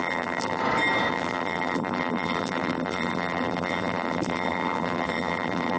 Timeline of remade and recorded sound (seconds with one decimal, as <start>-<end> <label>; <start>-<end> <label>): 0.0-0.6 remade; 0.6-1.1 recorded; 1.1-5.8 remade